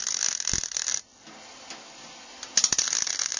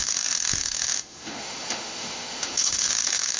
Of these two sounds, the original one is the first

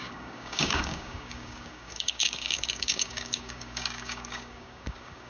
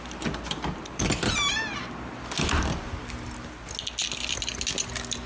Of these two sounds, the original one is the second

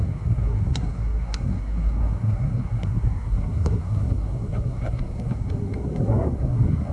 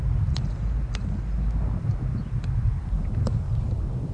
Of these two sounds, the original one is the second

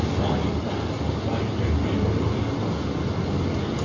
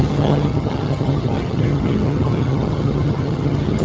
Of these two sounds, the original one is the first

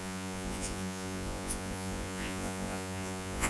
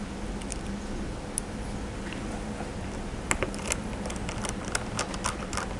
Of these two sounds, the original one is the second